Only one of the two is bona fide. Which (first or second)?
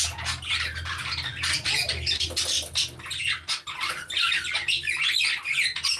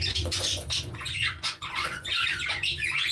first